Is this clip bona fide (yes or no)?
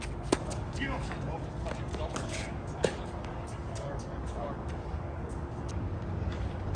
no